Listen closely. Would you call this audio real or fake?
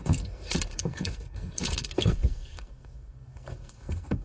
fake